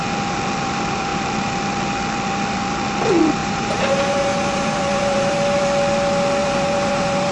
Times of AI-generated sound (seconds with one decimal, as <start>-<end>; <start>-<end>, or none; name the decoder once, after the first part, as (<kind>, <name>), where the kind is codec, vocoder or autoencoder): 3.4-5.6 (vocoder, BigVGAN v2); 6.4-7.3